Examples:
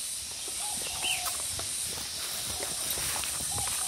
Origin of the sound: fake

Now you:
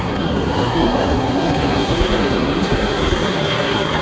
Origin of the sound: fake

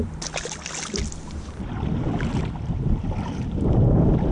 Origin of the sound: real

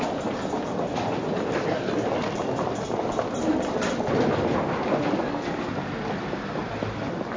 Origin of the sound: real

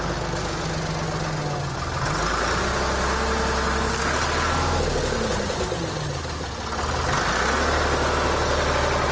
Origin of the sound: real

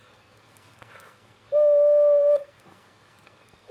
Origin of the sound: fake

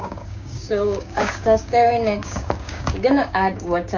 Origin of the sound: fake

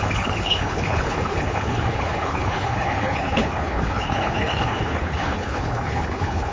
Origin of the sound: fake